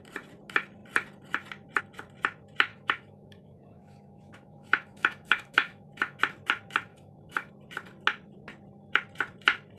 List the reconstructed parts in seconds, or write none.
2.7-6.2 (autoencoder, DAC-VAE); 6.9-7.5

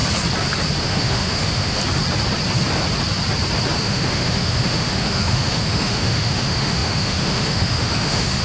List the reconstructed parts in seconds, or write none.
0.8-1.8 (autoencoder, DAC-VAE); 3.8-8.4

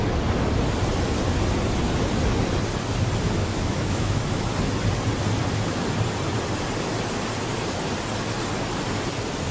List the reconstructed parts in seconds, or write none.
3.4-4.5 (autoencoder, DAC-VAE)

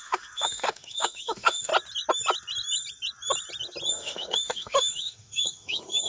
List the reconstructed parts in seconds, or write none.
0.0-1.7 (autoencoder, DAC-VAE); 3.9-6.1

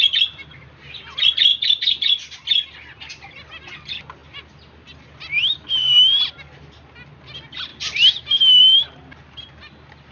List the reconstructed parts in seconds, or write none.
none

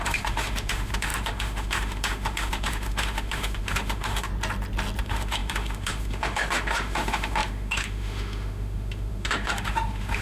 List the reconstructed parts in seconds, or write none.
0.0-4.3 (autoencoder, DAC-VAE); 5.0-10.2

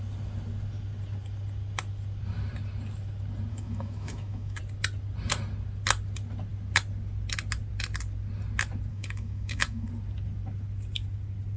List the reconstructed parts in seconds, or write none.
3.5-4.6 (autoencoder, DAC-VAE); 8.9-9.9